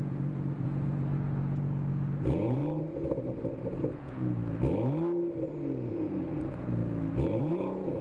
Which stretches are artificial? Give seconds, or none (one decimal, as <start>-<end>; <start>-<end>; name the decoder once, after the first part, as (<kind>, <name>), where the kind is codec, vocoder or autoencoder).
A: 0.0-2.6 (vocoder, Vocos); 3.7-4.4; 5.9-6.8; 7.4-8.0